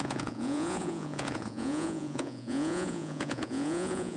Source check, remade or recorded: remade